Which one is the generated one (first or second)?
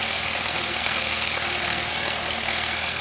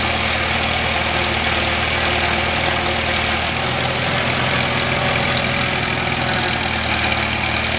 first